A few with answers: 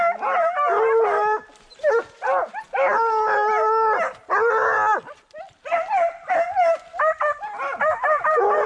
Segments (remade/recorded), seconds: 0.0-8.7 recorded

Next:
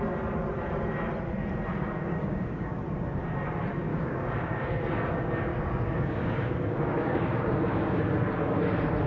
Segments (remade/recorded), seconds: 0.0-2.0 recorded; 2.0-2.8 remade; 2.8-3.9 recorded; 3.9-4.7 remade; 4.7-5.5 recorded; 5.5-8.0 remade; 8.0-9.1 recorded

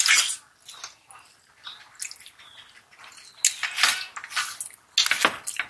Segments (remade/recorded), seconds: 0.0-5.7 recorded

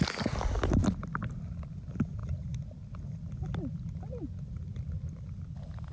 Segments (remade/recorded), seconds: 0.0-5.9 recorded

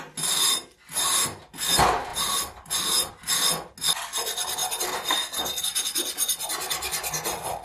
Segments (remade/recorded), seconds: 0.0-7.6 recorded

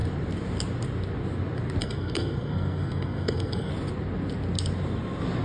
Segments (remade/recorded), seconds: 0.0-1.8 recorded; 1.8-3.7 remade; 3.7-5.4 recorded

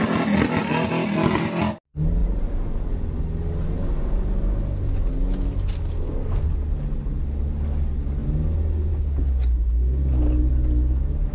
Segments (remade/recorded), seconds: 0.0-11.3 recorded